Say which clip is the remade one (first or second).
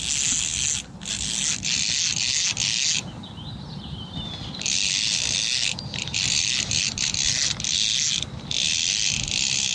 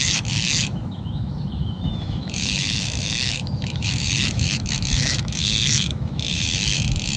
second